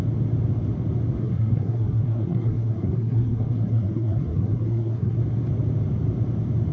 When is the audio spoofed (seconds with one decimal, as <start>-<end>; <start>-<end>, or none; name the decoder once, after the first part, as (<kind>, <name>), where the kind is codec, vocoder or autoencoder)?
1.2-5.2 (codec, SNAC)